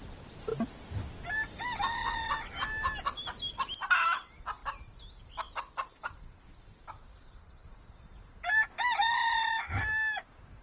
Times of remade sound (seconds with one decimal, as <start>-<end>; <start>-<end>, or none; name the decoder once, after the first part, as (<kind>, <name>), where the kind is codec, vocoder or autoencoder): 0.0-0.5 (vocoder, BigVGAN v2); 3.5-4.6; 5.9-10.6